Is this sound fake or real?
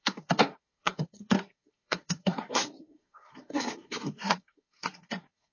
fake